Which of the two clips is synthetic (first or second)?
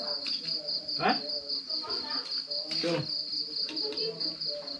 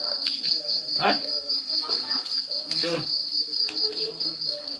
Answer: second